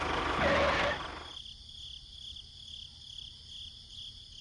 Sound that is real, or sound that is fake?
real